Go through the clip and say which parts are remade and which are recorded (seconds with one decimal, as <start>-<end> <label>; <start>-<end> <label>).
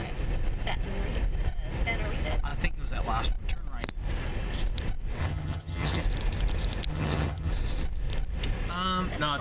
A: 0.0-5.2 recorded; 5.2-6.0 remade; 6.0-6.9 recorded; 6.9-7.5 remade; 7.5-9.4 recorded